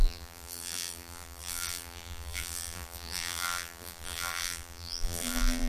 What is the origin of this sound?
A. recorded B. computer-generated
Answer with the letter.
B